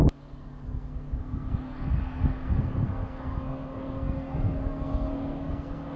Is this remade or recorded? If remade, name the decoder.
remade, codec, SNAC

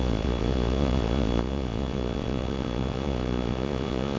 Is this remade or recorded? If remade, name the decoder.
remade, vocoder, Vocos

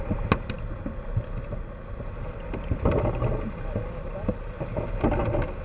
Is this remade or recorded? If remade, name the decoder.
recorded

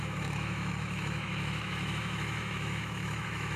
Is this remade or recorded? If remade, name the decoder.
remade, autoencoder, DAC-VAE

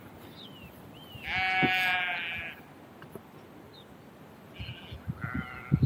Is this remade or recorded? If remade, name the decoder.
recorded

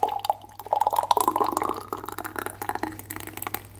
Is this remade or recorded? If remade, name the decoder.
recorded